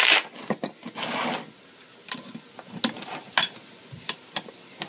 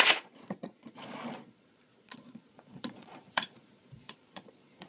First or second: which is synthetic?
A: second